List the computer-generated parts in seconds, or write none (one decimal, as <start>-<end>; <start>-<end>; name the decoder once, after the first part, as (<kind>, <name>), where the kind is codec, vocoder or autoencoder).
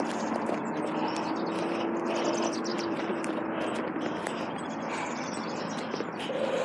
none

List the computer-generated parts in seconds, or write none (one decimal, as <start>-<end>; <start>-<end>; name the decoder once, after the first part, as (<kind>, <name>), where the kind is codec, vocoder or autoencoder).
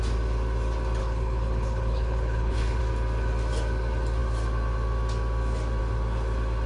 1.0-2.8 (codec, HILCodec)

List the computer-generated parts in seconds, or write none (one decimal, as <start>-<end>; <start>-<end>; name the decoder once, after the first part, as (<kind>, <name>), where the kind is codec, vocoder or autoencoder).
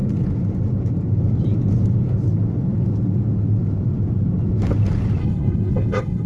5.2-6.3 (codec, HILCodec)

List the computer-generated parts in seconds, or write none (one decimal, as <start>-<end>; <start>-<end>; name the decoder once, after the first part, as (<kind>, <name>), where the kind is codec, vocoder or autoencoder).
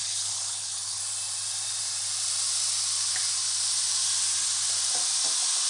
0.0-1.0 (codec, HILCodec)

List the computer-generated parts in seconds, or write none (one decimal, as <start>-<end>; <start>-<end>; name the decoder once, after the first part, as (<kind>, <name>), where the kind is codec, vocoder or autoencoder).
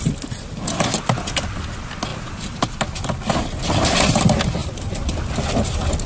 none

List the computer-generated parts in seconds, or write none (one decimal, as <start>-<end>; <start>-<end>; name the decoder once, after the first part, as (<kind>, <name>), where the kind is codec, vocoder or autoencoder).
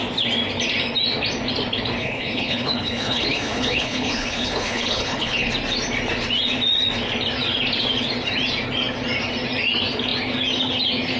2.0-5.5 (codec, HILCodec)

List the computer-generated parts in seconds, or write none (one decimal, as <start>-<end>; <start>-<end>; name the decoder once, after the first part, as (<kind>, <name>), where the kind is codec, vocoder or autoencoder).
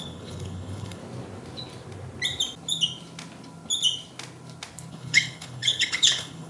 0.0-1.0 (codec, HILCodec); 4.9-6.5